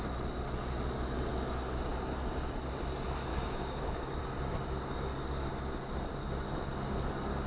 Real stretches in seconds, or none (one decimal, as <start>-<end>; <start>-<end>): 0.0-3.3; 4.2-7.5